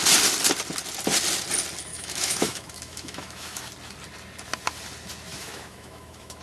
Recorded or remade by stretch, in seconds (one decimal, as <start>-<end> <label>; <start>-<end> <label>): 0.0-1.9 recorded; 1.9-3.7 remade; 3.7-5.3 recorded; 5.3-6.4 remade